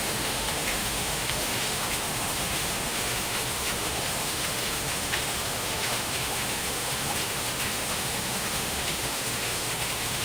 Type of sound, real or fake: fake